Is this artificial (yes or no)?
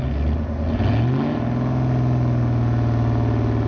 no